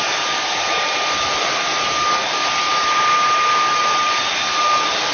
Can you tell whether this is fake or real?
real